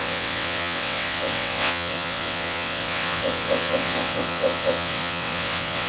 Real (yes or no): no